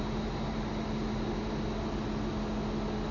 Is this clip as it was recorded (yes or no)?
yes